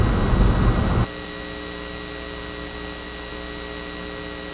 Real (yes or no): yes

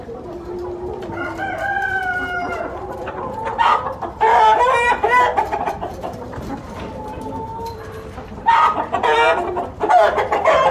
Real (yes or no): no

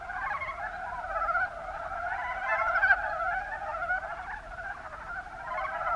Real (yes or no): yes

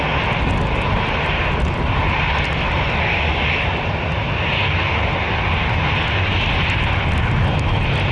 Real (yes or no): yes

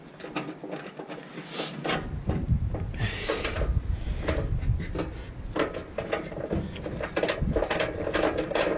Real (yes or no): yes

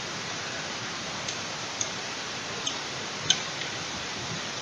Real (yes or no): no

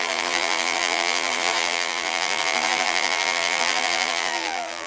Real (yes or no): no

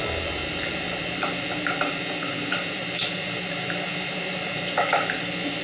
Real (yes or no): no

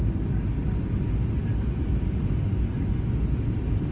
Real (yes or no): yes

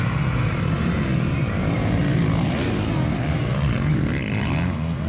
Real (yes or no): yes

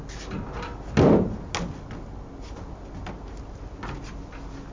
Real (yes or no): yes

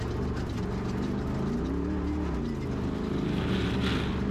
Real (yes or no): yes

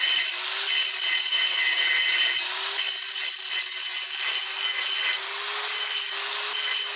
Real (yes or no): yes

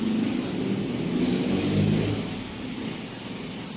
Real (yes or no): yes